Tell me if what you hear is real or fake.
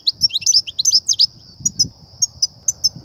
real